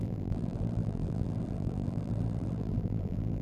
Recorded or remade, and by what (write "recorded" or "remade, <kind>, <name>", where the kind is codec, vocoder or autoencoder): remade, vocoder, BigVGAN v2